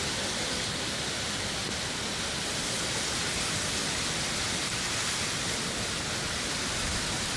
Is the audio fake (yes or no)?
no